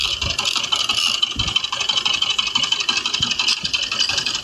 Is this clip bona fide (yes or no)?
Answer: no